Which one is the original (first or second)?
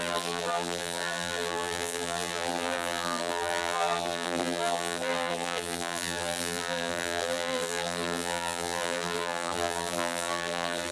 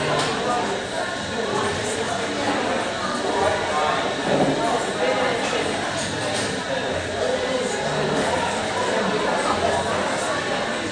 second